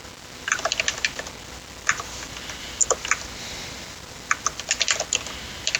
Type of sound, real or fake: real